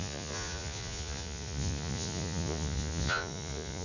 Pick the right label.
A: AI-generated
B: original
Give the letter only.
A